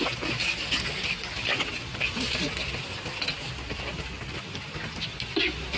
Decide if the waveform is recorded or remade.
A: recorded